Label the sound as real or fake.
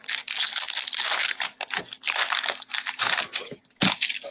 real